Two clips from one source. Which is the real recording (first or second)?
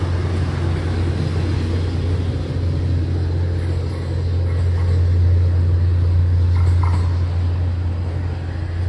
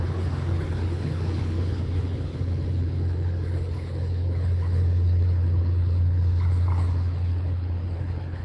first